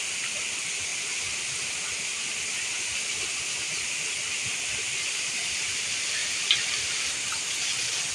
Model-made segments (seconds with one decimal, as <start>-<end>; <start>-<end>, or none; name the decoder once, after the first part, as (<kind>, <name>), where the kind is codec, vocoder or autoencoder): none